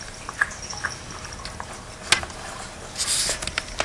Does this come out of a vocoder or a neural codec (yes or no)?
no